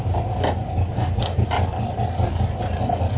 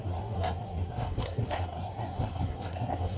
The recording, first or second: first